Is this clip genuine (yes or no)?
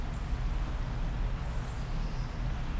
yes